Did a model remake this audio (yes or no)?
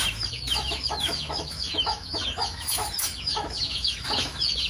yes